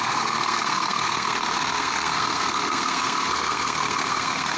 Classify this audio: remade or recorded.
remade